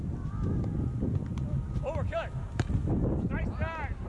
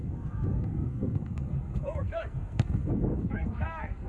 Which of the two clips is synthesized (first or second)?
second